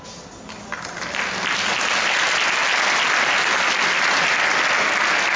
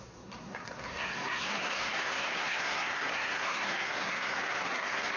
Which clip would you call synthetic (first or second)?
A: second